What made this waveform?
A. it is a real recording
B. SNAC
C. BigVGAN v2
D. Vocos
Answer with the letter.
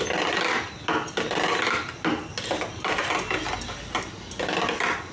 A